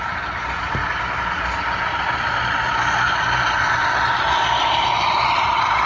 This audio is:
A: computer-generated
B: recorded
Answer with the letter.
B